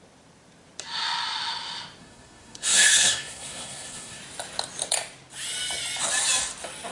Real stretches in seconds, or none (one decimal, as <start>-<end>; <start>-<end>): 0.0-2.0; 4.2-6.9